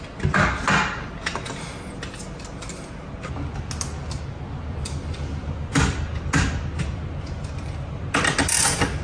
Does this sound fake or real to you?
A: real